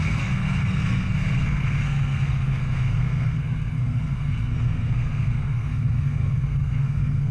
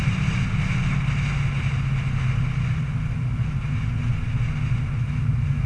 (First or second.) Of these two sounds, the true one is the second